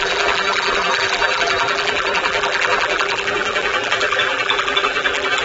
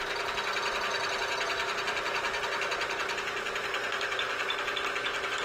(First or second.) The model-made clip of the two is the first